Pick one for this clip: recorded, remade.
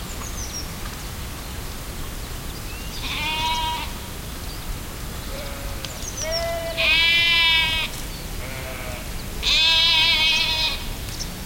recorded